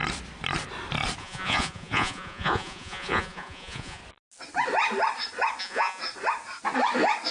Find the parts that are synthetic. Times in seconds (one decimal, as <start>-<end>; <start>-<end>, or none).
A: 1.2-4.0; 5.6-6.0